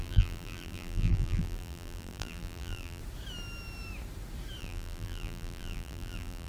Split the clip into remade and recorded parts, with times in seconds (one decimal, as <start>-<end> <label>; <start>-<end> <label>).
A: 0.0-3.0 remade; 3.0-4.6 recorded; 4.6-6.5 remade